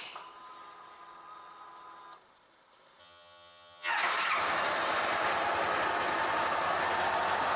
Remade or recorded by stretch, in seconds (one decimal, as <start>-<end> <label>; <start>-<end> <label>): 0.0-3.0 recorded; 3.0-3.9 remade; 3.9-7.6 recorded